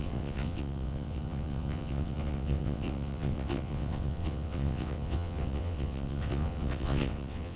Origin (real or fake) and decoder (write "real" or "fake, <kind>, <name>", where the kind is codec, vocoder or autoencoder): fake, vocoder, WaveNeXt